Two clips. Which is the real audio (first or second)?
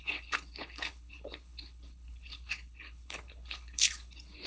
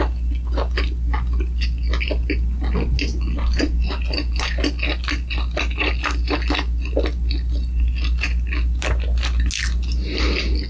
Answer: second